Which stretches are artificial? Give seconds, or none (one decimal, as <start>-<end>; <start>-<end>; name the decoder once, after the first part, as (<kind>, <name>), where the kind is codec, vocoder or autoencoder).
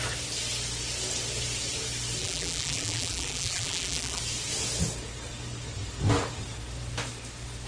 2.2-4.2 (vocoder, BigVGAN v2)